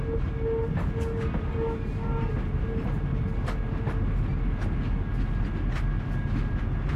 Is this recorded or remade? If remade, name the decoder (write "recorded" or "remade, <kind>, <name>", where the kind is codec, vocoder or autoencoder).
recorded